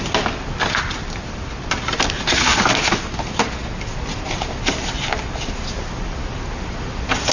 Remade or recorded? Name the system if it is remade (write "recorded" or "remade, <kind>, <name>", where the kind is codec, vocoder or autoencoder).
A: recorded